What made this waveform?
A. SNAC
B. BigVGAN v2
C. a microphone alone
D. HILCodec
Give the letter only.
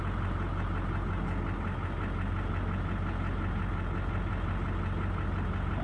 C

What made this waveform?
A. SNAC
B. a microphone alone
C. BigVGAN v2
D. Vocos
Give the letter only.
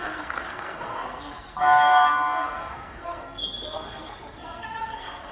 A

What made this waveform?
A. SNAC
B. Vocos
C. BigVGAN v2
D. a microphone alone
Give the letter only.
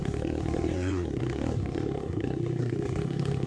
A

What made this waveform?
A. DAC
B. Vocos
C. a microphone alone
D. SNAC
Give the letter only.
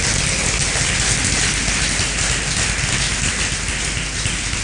C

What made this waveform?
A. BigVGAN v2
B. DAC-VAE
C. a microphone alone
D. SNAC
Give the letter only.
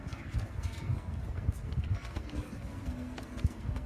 D